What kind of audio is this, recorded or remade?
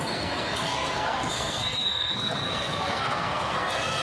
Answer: remade